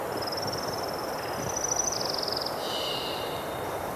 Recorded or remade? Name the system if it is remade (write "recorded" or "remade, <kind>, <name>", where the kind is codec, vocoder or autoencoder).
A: recorded